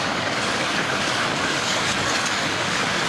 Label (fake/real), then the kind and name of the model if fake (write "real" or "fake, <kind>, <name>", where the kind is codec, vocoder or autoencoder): fake, codec, DAC